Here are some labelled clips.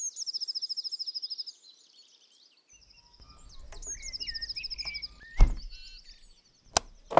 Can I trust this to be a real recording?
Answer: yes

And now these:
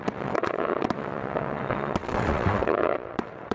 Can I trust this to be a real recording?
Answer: no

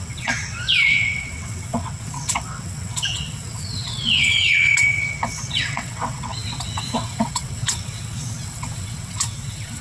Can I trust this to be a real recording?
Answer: no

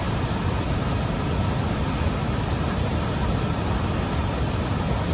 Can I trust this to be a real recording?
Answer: yes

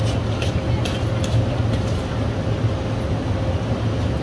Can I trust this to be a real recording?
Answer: yes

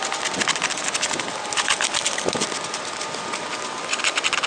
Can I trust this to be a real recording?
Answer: yes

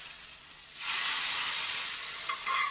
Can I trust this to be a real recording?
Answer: no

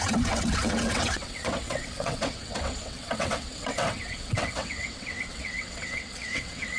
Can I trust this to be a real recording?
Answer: no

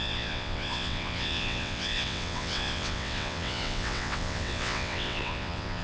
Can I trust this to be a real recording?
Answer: no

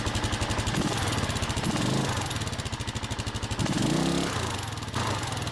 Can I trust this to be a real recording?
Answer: yes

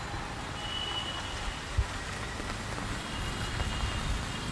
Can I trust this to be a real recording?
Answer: yes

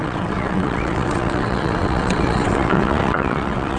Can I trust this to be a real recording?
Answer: no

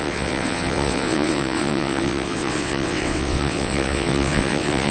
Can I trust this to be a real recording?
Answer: no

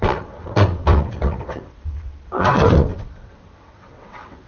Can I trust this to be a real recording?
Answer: no